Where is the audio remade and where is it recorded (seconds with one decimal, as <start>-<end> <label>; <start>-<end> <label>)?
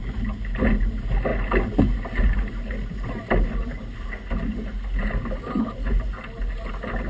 0.0-7.1 recorded